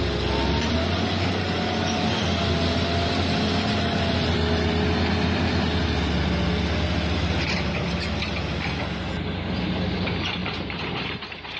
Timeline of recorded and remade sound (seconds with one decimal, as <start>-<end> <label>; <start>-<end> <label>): 0.0-10.4 recorded; 10.4-11.6 remade